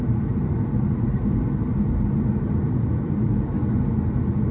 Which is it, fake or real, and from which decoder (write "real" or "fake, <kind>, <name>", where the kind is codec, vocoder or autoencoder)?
real